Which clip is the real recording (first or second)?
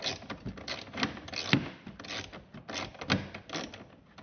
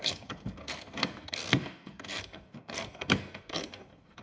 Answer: first